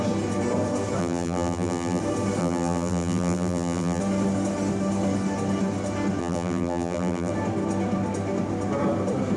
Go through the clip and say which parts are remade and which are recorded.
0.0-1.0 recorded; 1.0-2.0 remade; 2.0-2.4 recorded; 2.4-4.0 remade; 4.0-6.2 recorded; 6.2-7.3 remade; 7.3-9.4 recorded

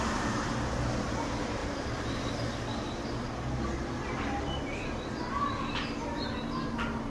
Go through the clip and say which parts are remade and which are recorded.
0.0-1.6 recorded; 1.6-2.3 remade; 2.3-7.1 recorded

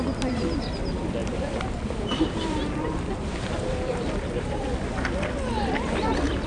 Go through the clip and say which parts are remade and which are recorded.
0.0-1.2 recorded; 1.2-4.6 remade; 4.6-6.5 recorded